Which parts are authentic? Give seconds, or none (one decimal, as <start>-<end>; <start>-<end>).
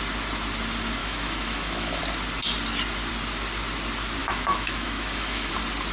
0.0-1.0; 2.0-4.2; 5.5-5.9